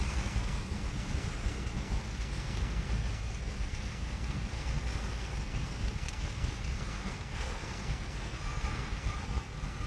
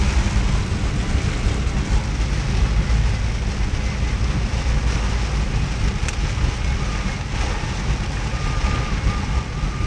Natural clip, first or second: second